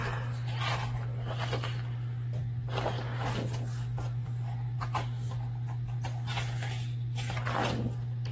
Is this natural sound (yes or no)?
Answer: yes